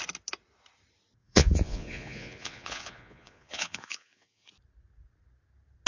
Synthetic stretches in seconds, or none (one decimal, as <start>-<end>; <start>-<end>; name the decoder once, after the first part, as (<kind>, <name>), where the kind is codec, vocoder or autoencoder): 1.2-4.5 (vocoder, Vocos)